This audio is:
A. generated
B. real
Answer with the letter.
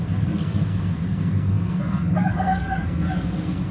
A